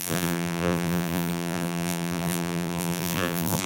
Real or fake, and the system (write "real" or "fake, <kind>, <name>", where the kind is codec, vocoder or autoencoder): fake, vocoder, BigVGAN v2